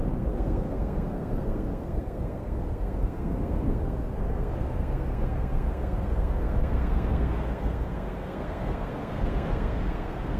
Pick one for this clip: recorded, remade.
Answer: remade